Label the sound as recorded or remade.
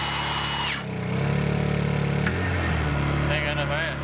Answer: recorded